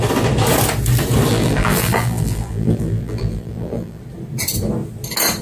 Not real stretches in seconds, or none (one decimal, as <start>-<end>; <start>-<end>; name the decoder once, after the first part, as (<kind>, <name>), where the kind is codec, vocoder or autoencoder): 1.3-4.0 (vocoder, BigVGAN v2)